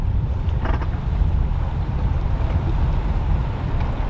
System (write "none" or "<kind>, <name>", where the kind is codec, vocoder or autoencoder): none